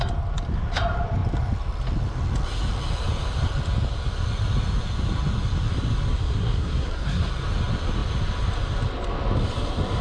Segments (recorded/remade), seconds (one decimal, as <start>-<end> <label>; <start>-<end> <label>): 0.0-6.1 recorded; 6.1-7.3 remade; 7.3-10.0 recorded